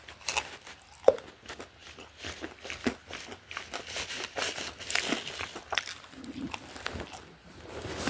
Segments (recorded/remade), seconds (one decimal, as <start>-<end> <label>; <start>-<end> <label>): 0.0-8.1 recorded